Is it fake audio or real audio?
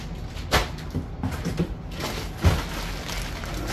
real